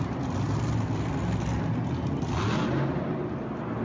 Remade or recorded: recorded